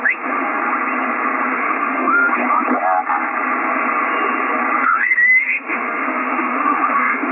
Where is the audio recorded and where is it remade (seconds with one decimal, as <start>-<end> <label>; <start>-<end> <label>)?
0.0-0.6 remade; 0.6-1.5 recorded; 1.5-2.4 remade; 2.4-5.1 recorded; 5.1-7.3 remade